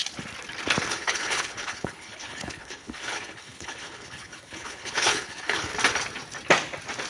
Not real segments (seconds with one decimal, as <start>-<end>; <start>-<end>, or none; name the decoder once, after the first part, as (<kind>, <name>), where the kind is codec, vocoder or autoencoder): 0.9-5.7 (codec, HILCodec)